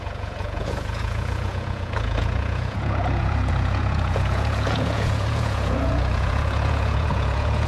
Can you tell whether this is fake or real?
fake